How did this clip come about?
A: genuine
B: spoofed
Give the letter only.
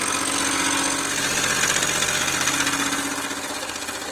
A